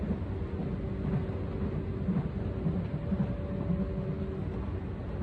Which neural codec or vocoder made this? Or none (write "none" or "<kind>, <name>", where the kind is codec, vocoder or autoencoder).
none